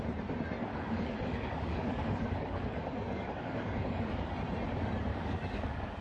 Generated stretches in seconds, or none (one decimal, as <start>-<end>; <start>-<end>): 0.7-4.3; 5.1-6.0